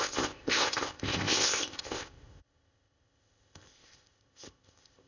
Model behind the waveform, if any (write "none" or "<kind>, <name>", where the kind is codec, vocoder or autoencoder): codec, ZipCodec